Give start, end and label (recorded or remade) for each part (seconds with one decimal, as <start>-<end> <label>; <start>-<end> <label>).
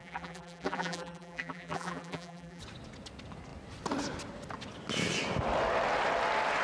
0.0-2.6 remade; 2.6-6.6 recorded